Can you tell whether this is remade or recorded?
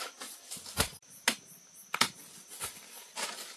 recorded